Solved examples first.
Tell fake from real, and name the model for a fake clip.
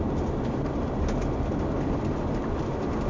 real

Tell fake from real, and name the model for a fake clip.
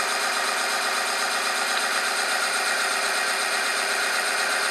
real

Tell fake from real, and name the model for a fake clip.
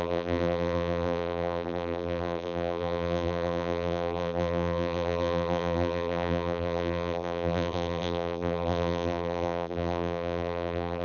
fake, vocoder, BigVGAN v2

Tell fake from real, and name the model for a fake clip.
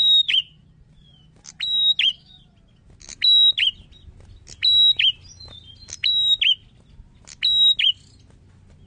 real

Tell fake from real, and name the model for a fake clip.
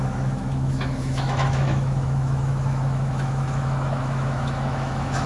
fake, autoencoder, DAC-VAE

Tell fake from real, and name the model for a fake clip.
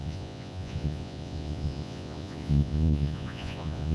fake, vocoder, Vocos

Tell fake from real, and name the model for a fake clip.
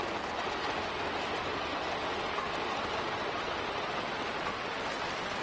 real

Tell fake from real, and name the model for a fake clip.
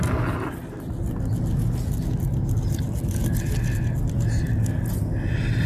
real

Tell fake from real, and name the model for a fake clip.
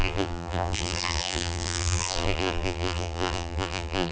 fake, vocoder, BigVGAN v2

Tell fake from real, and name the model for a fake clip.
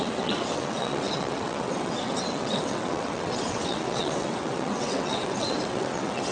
fake, vocoder, WaveNeXt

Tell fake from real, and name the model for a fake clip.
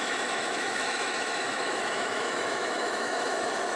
fake, autoencoder, DAC-VAE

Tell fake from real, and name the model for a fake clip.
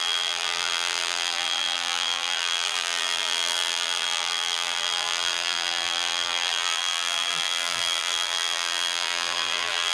fake, vocoder, BigVGAN v2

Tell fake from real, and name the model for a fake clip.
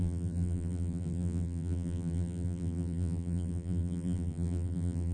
fake, vocoder, BigVGAN v2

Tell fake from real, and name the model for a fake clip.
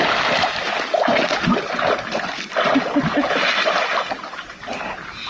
real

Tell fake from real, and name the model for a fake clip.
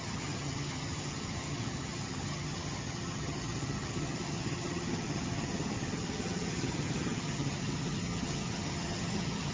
fake, vocoder, HiFi-GAN